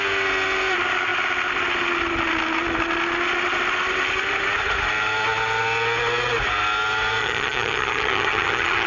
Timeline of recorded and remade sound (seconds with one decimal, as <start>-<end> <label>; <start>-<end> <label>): 0.0-7.2 recorded; 7.2-8.9 remade